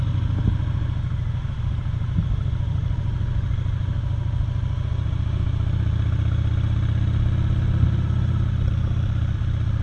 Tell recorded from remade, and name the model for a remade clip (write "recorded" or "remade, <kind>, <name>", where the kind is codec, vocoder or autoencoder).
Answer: recorded